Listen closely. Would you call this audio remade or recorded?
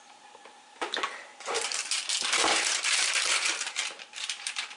remade